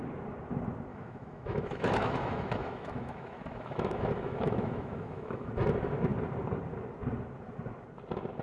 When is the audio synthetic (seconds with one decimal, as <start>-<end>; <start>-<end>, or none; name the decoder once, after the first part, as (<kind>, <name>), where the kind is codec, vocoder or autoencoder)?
0.9-5.5 (autoencoder, DAC-VAE)